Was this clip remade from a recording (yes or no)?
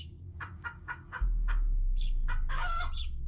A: yes